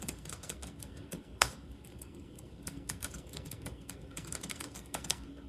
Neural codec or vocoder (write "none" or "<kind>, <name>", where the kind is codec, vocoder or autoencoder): codec, SNAC